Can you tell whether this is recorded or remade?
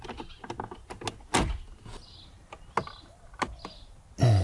recorded